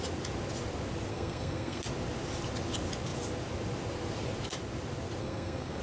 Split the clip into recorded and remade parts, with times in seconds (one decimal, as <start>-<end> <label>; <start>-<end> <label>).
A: 0.0-1.1 recorded; 1.1-1.8 remade; 1.8-5.2 recorded; 5.2-5.8 remade